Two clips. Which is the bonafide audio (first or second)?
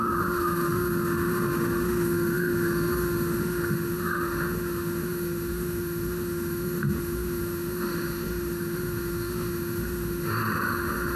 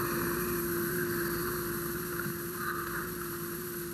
second